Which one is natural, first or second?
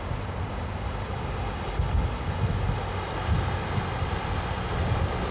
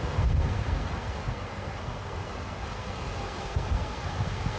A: first